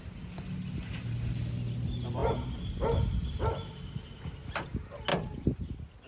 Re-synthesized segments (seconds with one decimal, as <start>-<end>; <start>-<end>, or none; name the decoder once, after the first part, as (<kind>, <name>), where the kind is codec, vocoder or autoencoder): 5.1-5.6 (vocoder, BigVGAN v2)